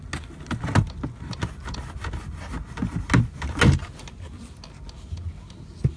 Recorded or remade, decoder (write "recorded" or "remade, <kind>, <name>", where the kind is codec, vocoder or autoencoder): recorded